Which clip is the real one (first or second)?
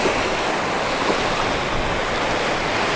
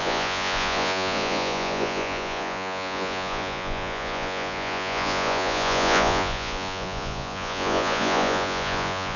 first